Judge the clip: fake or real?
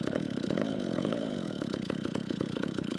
fake